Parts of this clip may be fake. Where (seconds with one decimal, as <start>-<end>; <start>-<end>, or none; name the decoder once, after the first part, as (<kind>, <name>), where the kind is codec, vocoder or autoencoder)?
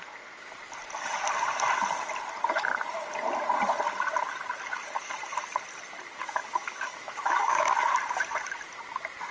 6.2-7.9 (autoencoder, DAC-VAE)